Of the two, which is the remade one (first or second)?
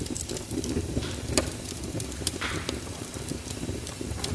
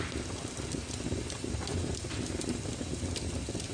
first